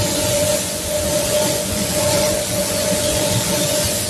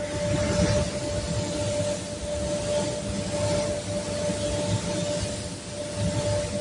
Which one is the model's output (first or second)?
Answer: first